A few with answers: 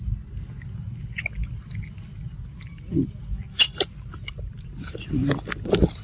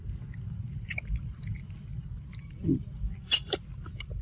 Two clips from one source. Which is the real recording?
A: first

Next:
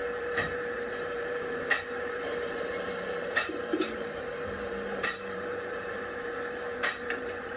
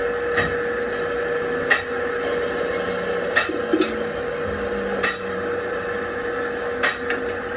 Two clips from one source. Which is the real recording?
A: second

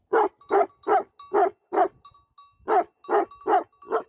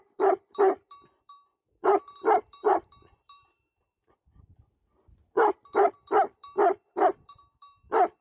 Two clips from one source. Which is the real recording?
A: first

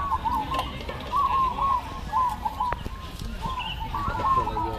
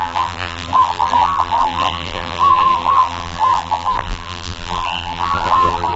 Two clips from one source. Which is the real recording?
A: first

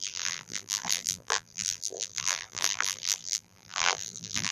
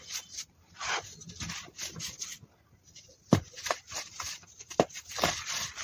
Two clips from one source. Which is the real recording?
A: second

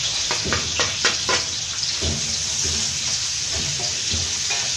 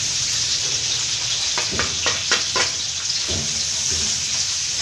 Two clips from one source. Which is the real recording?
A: first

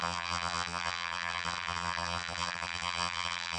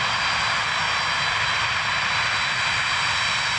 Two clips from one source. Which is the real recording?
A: second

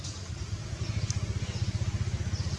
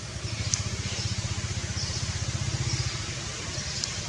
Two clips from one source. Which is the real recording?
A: first